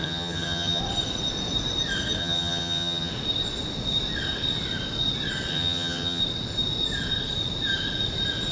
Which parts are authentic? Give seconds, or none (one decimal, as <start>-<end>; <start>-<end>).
0.8-2.2; 3.1-5.5; 6.2-8.5